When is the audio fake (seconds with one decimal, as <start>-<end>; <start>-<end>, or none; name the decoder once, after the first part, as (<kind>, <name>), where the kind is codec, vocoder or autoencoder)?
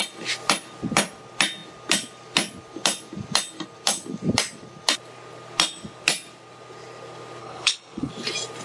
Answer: 7.4-8.1 (codec, HILCodec)